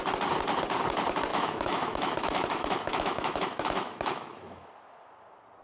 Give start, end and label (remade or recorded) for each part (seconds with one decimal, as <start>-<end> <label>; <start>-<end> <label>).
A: 0.0-1.3 recorded; 1.3-4.7 remade; 4.7-5.6 recorded